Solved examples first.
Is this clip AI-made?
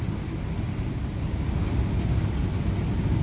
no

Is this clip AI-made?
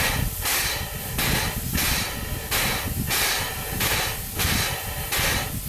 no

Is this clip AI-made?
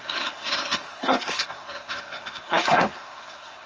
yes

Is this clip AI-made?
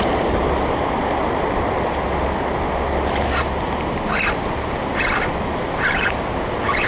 no